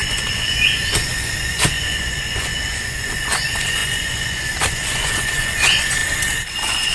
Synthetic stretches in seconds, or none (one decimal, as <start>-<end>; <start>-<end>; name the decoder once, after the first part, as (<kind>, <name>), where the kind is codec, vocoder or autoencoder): 0.0-6.0 (vocoder, Vocos); 6.5-6.9